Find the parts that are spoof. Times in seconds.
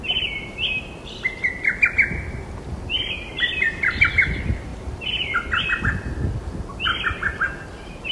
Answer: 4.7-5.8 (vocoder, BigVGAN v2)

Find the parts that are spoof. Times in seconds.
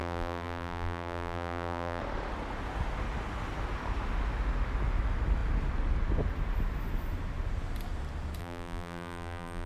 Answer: 0.0-2.0 (vocoder, BigVGAN v2); 8.4-9.7